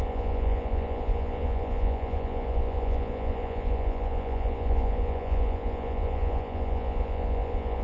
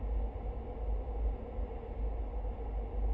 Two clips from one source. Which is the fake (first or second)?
first